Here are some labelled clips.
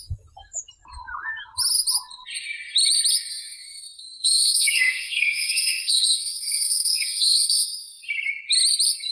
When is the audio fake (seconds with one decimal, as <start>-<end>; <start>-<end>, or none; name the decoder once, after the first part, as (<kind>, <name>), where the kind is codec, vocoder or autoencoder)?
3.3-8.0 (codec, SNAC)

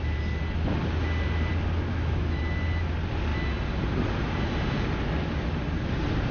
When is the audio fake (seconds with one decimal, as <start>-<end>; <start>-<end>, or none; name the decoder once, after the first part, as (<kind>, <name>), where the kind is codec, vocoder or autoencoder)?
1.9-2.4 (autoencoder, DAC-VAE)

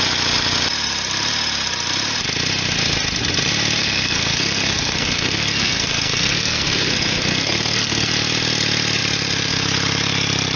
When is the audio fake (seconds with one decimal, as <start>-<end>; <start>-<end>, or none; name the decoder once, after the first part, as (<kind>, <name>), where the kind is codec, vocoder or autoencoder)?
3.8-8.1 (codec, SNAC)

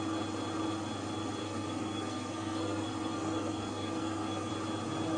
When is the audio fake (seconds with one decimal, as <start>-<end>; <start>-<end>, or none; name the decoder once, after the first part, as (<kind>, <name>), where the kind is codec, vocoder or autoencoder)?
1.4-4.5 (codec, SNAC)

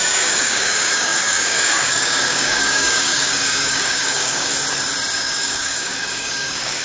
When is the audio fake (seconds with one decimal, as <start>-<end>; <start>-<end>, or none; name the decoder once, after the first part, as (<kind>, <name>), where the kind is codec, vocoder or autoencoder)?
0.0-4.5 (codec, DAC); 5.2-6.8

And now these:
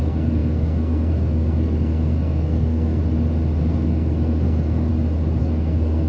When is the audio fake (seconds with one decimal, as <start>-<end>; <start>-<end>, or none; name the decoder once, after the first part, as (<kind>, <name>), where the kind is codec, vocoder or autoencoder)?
0.0-3.0 (codec, SNAC); 3.6-4.9; 5.4-6.1

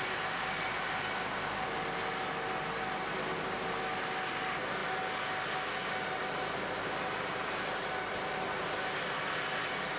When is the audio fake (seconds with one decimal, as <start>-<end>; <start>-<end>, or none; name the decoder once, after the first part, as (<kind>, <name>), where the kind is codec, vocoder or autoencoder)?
none

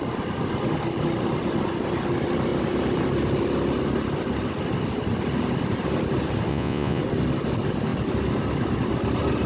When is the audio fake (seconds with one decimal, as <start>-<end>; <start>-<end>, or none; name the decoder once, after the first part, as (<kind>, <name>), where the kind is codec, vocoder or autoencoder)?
6.5-7.0 (vocoder, Vocos)